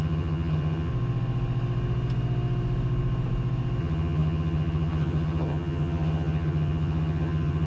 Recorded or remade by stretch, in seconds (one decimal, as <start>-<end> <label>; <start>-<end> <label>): 0.0-0.9 remade; 0.9-3.8 recorded; 3.8-7.7 remade